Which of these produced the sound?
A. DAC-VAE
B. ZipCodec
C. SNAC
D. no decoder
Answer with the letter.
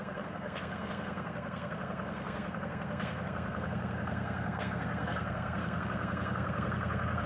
C